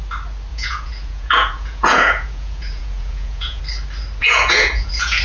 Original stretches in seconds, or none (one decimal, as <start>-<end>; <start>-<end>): 0.0-0.5; 3.6-4.2